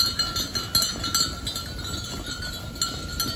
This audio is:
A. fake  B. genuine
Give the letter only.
B